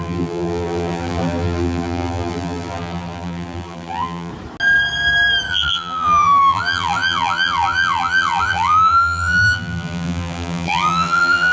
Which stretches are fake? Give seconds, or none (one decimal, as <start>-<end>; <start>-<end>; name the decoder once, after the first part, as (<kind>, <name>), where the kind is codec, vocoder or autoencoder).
0.0-4.3 (vocoder, BigVGAN v2); 5.5-11.5